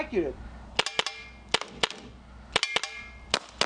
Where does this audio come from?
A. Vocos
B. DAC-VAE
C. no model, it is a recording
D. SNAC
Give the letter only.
C